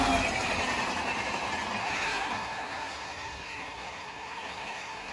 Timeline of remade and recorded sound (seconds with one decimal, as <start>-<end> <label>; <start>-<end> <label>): 0.0-1.8 recorded; 1.8-5.1 remade